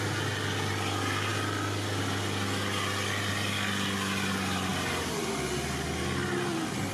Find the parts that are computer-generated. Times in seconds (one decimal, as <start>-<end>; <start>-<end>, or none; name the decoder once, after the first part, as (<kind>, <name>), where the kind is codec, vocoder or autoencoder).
4.7-5.3 (vocoder, BigVGAN v2)